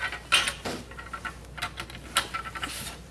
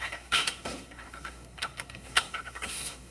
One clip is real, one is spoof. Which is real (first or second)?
first